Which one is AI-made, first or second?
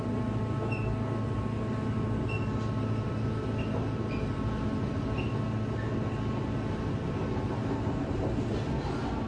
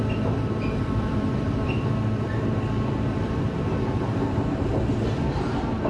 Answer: second